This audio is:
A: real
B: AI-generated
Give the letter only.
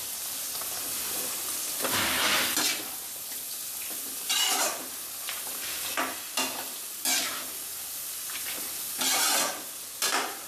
A